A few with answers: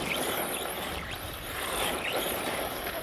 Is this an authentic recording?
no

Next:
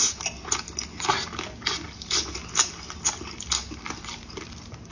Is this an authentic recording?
yes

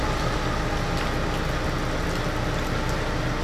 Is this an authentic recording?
yes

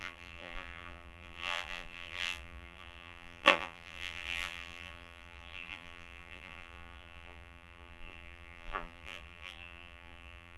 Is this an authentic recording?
no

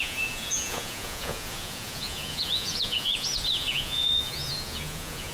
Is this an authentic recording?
no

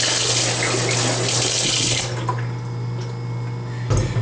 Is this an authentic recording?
yes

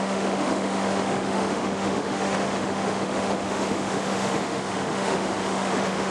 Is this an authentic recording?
no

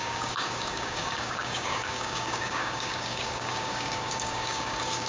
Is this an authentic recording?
no